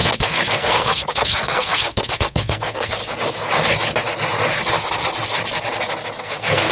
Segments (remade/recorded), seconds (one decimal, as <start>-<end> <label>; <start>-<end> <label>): 0.0-3.0 remade; 3.0-6.2 recorded; 6.2-6.7 remade